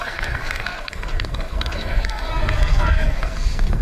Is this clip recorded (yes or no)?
no